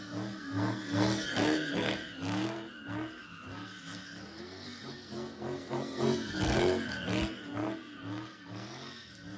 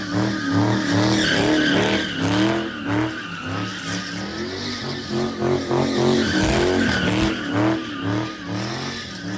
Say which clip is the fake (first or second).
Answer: first